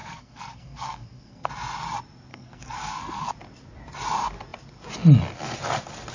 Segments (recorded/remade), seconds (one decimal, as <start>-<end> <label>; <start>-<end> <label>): 0.0-1.5 remade; 1.5-2.3 recorded; 2.3-3.3 remade; 3.3-6.1 recorded